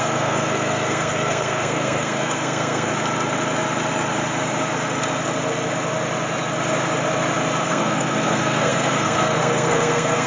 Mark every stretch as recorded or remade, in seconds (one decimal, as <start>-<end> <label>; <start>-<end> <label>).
0.0-2.9 remade; 2.9-7.6 recorded; 7.6-10.3 remade